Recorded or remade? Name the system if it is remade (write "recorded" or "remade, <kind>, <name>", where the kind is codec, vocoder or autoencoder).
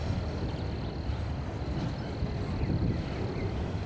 recorded